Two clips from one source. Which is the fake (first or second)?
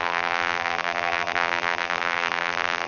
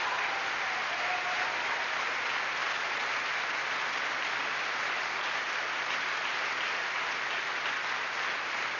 first